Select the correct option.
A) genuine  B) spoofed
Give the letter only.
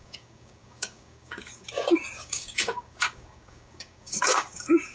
B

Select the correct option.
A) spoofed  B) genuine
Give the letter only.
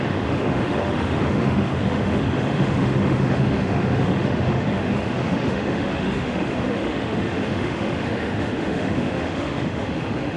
A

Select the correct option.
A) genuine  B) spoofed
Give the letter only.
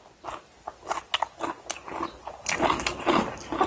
A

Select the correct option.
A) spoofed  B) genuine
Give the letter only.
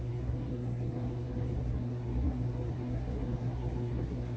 A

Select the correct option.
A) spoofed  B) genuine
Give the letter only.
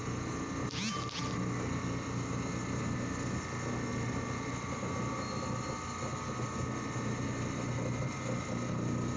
B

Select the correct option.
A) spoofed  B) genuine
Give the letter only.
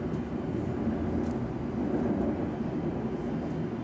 B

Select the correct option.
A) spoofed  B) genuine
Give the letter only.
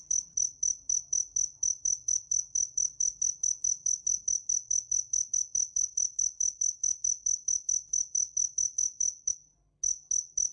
B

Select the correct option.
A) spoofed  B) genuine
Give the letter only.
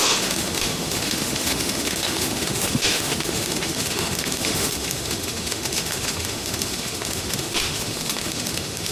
A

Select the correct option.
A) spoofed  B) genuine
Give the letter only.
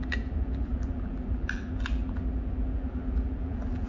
A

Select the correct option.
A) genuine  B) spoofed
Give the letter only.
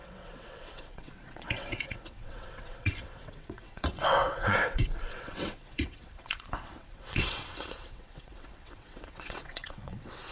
B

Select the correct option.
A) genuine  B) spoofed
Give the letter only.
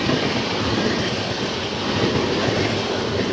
A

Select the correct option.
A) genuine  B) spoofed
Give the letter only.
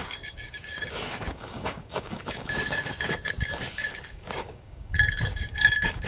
B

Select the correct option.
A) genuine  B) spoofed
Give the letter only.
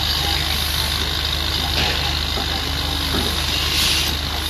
A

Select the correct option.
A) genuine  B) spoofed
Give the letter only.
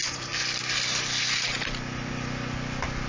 A